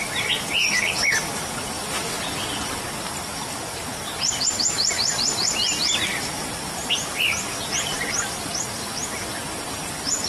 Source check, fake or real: real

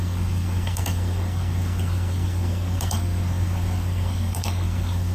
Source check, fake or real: fake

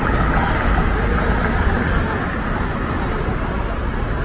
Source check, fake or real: real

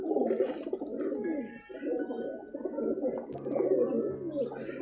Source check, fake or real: real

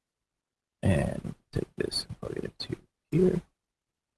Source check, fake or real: real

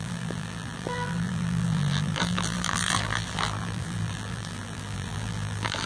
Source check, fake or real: fake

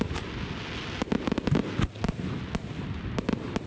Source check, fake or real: real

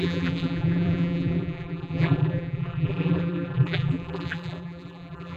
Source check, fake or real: fake